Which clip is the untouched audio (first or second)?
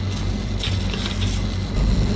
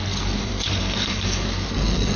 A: first